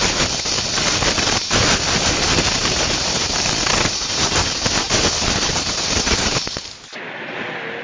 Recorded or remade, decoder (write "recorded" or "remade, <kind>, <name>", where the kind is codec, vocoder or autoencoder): remade, vocoder, BigVGAN v2